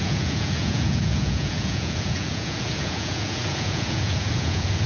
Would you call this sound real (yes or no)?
no